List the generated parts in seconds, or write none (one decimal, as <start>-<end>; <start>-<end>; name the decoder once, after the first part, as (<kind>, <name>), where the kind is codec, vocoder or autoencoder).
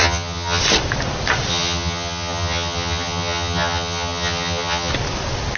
0.0-0.6 (vocoder, HiFi-GAN); 1.5-4.9